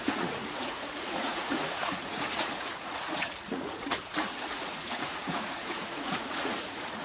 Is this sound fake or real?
fake